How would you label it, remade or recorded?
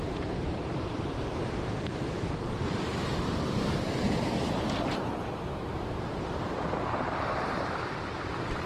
remade